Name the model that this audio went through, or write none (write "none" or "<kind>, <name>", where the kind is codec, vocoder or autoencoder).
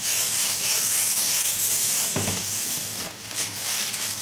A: codec, DAC